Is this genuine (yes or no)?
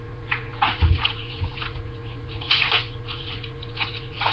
no